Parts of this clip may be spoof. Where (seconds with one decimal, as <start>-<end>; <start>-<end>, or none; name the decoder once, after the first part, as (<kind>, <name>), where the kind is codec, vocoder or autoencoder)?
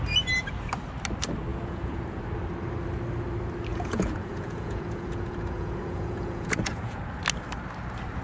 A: 1.5-2.0 (vocoder, Vocos); 3.7-7.0